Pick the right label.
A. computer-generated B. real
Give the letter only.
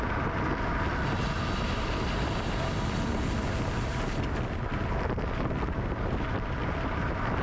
B